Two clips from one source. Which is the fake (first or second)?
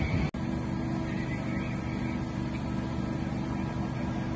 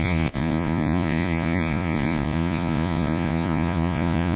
second